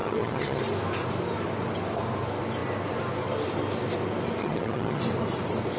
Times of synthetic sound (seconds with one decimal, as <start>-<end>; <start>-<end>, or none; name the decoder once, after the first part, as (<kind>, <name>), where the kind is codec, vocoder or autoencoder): 0.0-0.6 (vocoder, HiFi-GAN); 4.4-5.0